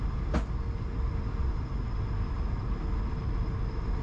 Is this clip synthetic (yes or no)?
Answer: no